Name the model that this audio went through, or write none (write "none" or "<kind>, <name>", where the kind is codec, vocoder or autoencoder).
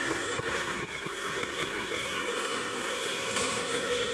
codec, SNAC